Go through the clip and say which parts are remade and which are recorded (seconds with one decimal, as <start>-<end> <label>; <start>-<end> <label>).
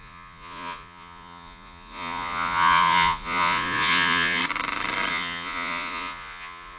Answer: 0.0-4.4 remade; 4.4-5.1 recorded; 5.1-6.8 remade